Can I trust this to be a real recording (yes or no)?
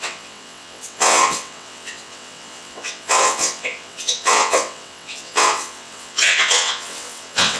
no